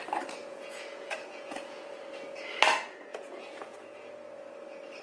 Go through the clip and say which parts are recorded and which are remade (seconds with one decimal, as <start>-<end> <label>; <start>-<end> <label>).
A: 0.0-0.4 recorded; 0.4-1.9 remade; 1.9-3.1 recorded; 3.1-4.1 remade; 4.1-5.0 recorded